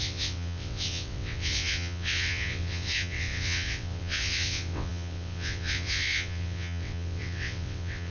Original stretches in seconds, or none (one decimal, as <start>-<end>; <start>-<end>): none